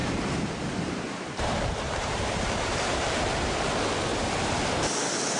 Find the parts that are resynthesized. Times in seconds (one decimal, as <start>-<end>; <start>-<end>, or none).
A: 0.0-3.2; 4.1-4.6